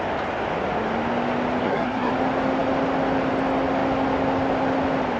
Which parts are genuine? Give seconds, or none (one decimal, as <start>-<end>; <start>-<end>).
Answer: 0.0-1.6; 2.1-5.2